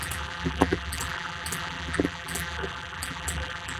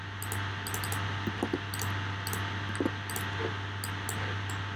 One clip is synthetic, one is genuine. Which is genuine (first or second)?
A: second